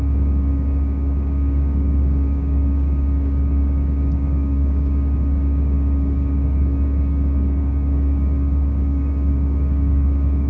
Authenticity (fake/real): fake